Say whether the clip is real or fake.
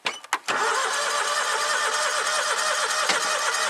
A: real